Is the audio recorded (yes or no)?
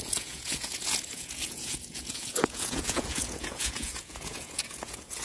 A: no